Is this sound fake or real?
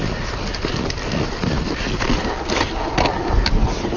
real